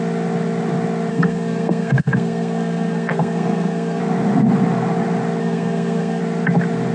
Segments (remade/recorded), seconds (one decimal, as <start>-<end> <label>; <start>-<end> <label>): 0.0-1.1 recorded; 1.1-4.0 remade; 4.0-5.4 recorded; 5.4-6.2 remade; 6.2-6.9 recorded